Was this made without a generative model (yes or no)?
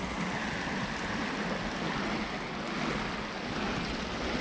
yes